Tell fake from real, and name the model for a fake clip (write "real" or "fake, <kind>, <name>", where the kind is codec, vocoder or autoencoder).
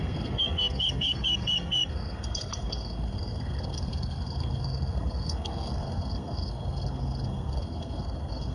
fake, codec, SNAC